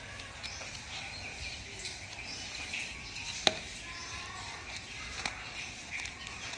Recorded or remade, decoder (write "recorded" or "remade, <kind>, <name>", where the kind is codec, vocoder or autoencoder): recorded